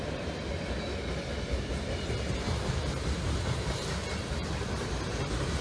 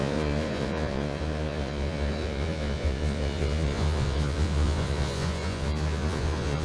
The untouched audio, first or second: first